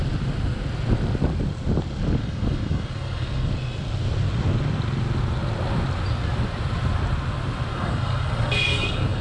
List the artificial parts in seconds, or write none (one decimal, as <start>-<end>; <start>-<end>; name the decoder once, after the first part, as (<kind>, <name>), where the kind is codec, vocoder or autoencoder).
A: 2.2-3.5 (codec, DAC); 7.7-9.2